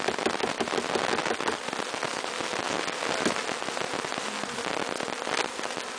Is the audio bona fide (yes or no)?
yes